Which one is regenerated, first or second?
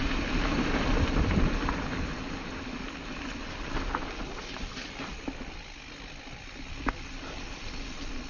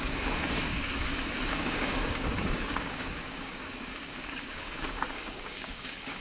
second